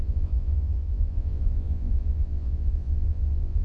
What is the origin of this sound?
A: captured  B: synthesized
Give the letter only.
B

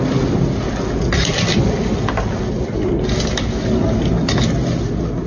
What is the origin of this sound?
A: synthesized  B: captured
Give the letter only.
B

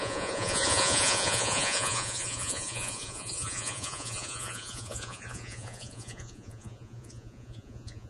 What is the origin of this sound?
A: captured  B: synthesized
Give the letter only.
B